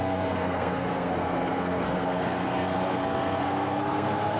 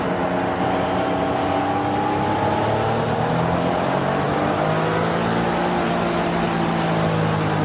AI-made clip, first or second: first